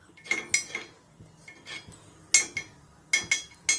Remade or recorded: recorded